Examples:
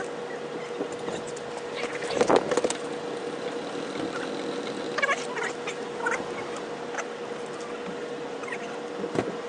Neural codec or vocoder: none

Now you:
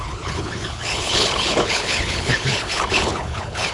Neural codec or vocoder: codec, HILCodec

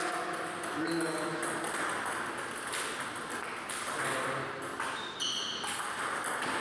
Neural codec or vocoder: none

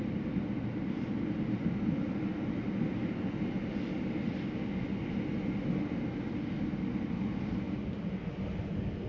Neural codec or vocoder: none